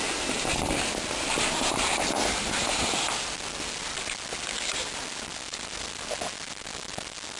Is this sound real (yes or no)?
yes